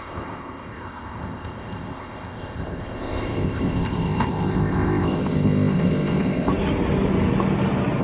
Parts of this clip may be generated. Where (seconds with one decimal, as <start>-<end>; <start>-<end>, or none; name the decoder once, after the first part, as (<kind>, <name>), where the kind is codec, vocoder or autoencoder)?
0.0-6.5 (codec, ZipCodec)